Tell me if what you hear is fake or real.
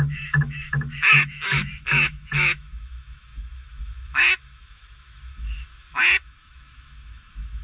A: fake